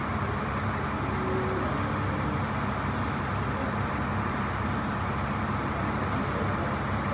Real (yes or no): yes